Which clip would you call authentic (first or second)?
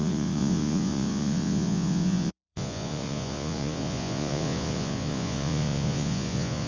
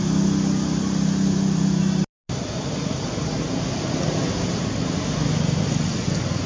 second